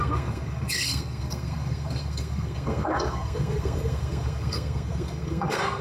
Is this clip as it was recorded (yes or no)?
no